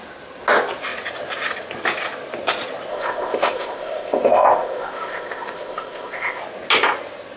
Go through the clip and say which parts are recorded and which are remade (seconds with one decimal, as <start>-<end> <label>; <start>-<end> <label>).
0.0-2.9 recorded; 2.9-6.4 remade; 6.4-7.4 recorded